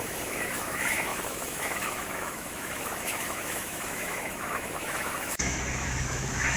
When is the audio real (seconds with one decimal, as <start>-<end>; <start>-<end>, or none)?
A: none